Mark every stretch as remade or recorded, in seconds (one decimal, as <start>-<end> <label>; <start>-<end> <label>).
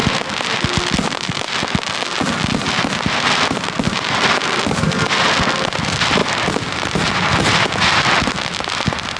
0.0-9.2 recorded